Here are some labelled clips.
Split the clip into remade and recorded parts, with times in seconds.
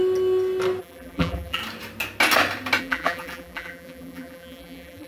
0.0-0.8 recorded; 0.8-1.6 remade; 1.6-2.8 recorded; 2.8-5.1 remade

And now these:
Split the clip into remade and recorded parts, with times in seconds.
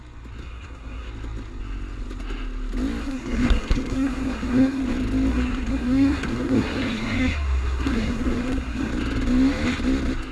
0.0-0.4 recorded; 0.4-1.1 remade; 1.1-3.0 recorded; 3.0-4.8 remade; 4.8-5.3 recorded; 5.3-8.9 remade; 8.9-10.3 recorded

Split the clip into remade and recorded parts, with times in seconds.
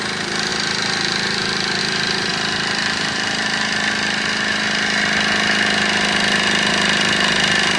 0.0-7.8 recorded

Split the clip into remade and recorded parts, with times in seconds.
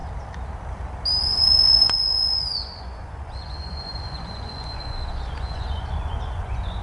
0.0-1.2 recorded; 1.2-6.8 remade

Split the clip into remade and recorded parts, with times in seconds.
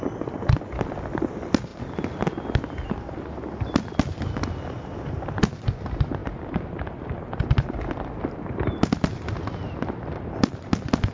0.0-11.1 recorded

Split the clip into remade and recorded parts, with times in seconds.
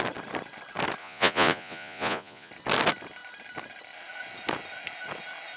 0.0-1.0 recorded; 1.0-2.5 remade; 2.5-5.6 recorded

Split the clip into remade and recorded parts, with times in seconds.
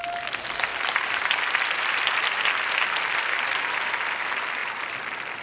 0.0-5.4 recorded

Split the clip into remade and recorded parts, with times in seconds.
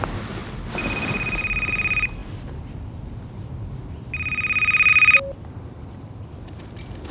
0.0-7.1 recorded